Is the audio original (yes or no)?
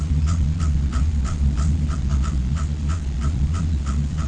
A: no